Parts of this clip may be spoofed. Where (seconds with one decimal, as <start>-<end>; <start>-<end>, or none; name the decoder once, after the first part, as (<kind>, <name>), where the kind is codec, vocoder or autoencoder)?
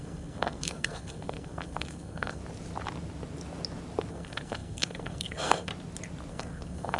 0.0-2.4 (codec, SNAC); 4.1-5.7; 6.3-7.0